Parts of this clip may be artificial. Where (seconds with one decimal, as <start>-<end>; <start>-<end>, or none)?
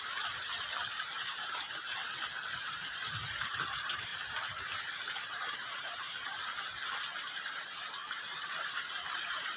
0.0-2.0; 2.6-4.1; 5.3-6.5; 7.2-9.6